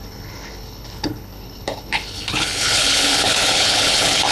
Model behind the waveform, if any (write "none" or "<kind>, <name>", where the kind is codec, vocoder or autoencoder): codec, HILCodec